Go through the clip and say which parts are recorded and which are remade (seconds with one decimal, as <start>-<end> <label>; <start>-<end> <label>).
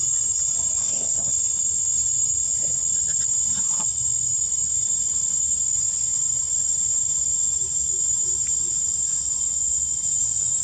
0.0-0.8 recorded; 0.8-1.3 remade; 1.3-10.6 recorded